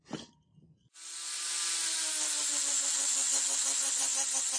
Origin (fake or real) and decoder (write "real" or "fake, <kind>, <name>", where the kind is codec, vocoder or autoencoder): real